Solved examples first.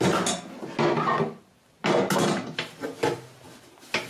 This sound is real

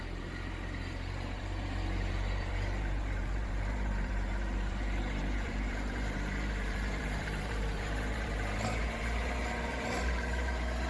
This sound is fake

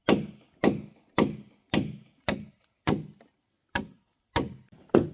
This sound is real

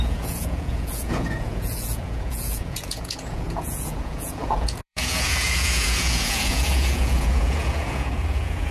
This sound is fake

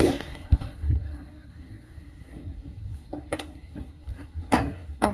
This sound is fake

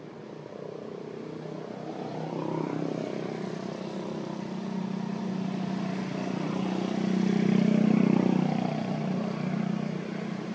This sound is real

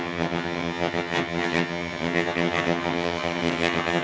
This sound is fake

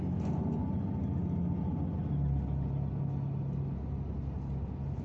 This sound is real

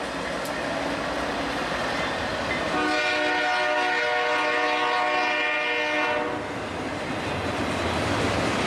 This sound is real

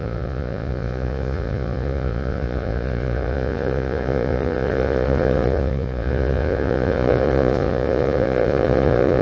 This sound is fake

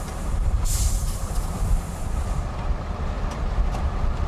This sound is fake